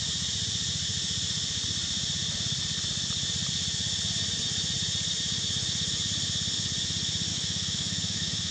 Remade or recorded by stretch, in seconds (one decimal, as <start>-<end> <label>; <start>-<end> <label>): 0.0-7.3 recorded; 7.3-8.5 remade